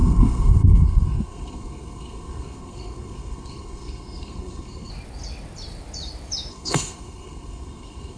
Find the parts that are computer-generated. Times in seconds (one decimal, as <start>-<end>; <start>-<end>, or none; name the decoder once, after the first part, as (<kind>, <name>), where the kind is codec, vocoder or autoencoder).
0.0-4.9 (codec, SNAC); 6.5-8.2